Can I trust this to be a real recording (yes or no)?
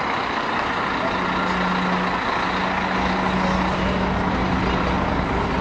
yes